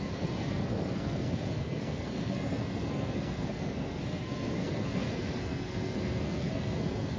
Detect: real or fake fake